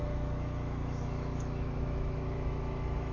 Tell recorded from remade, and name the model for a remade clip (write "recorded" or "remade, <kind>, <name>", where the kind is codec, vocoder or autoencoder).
remade, autoencoder, DAC-VAE